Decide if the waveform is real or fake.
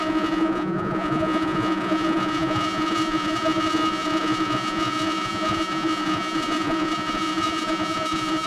fake